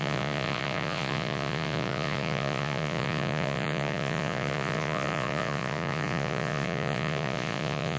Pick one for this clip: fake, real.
fake